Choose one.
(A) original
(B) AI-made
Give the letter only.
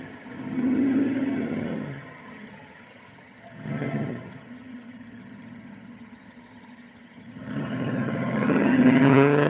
B